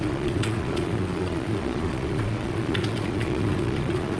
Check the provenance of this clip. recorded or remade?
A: remade